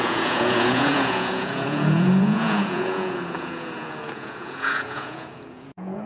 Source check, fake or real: fake